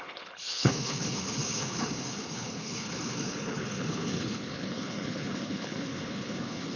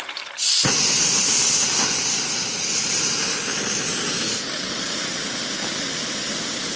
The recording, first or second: second